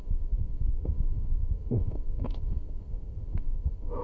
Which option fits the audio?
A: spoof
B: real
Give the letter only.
A